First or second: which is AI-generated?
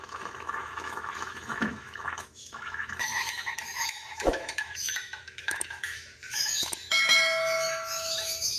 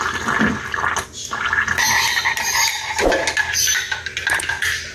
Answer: first